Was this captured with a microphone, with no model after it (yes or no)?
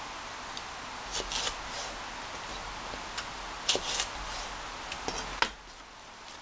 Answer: yes